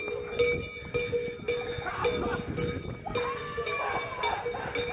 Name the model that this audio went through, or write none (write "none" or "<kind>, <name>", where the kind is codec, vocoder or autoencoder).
none